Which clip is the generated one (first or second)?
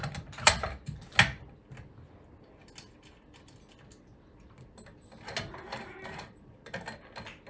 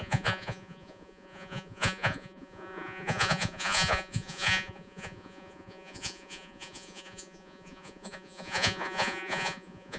second